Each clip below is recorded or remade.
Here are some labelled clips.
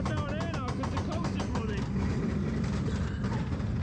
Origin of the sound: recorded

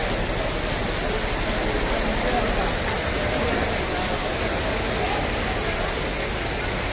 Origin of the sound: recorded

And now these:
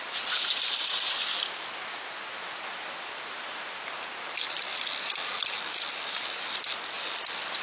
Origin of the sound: recorded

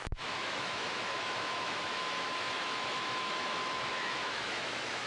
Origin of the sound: remade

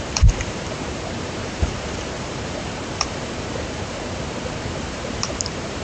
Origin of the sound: remade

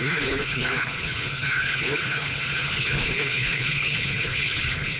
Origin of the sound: remade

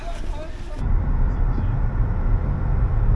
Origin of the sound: recorded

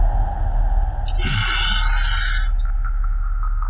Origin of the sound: recorded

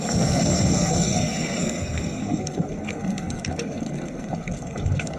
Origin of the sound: remade